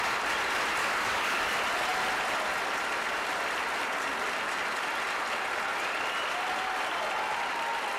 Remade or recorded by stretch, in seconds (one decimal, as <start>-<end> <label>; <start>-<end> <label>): 0.0-0.8 recorded; 0.8-1.5 remade; 1.5-8.0 recorded